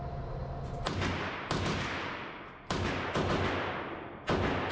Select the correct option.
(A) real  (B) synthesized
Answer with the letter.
A